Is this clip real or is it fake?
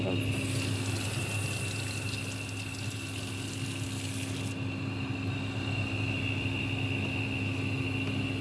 real